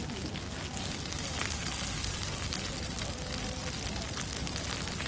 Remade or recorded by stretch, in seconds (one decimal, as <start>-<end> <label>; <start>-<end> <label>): 0.0-5.1 recorded